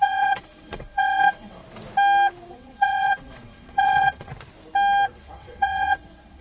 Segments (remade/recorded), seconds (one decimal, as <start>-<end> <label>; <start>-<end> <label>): 0.0-1.6 remade; 1.6-2.5 recorded; 2.5-4.3 remade; 4.3-5.1 recorded; 5.1-6.4 remade